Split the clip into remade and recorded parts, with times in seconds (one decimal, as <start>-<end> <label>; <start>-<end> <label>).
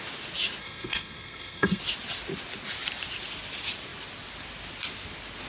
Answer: 0.0-0.6 recorded; 0.6-1.8 remade; 1.8-5.5 recorded